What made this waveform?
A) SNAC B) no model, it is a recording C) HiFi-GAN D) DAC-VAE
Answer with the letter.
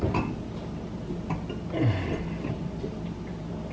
B